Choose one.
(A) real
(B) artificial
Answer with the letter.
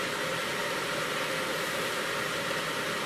A